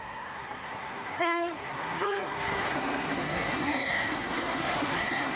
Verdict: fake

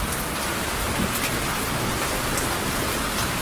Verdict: real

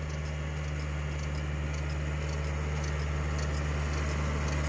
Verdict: real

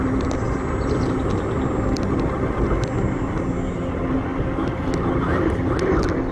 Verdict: real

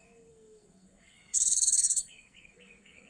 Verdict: fake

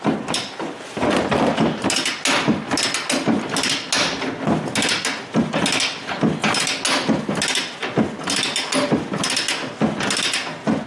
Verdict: real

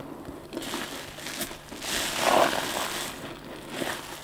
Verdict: real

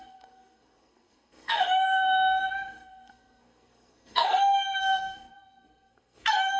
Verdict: fake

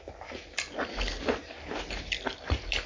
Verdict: real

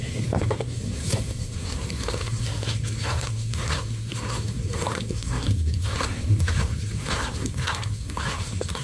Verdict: fake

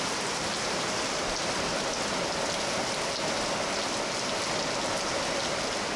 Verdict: real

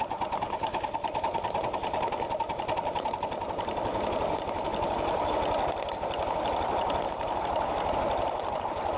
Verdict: real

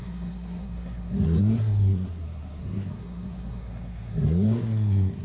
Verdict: fake